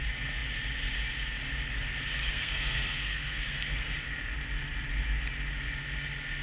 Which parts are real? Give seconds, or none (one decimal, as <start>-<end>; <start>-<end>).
0.0-2.2; 3.9-6.4